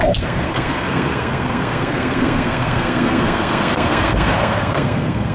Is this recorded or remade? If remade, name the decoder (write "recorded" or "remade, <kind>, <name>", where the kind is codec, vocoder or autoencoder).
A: remade, codec, SNAC